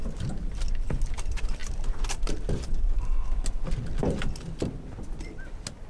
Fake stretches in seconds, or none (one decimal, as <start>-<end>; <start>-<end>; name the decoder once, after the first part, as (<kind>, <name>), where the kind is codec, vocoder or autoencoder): none